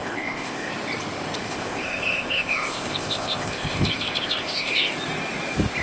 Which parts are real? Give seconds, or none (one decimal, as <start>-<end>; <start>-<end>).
0.7-1.4; 4.9-5.8